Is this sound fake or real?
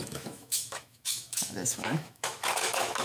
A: fake